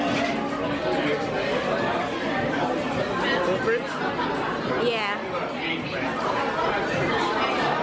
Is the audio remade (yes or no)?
no